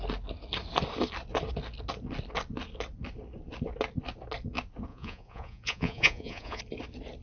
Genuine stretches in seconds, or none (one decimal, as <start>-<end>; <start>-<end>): 0.0-4.9; 6.6-7.2